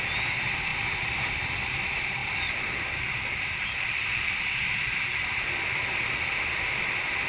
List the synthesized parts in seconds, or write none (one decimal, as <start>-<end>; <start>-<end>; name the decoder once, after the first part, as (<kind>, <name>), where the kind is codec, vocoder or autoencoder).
0.7-1.3 (vocoder, BigVGAN v2); 2.2-3.6; 4.0-4.8